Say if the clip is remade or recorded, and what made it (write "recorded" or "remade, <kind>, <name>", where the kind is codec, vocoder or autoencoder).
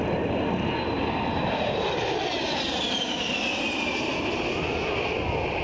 recorded